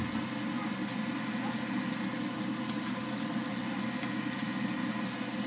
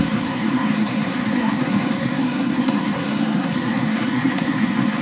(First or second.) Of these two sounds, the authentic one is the first